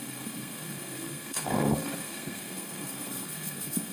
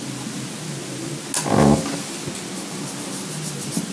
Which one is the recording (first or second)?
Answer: second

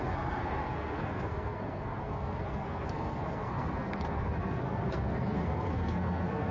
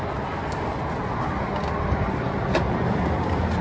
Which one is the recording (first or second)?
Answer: second